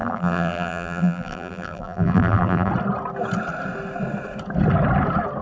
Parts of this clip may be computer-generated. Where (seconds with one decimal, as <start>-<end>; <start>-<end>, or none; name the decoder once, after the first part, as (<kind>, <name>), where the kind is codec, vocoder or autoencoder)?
0.0-2.7 (vocoder, BigVGAN v2)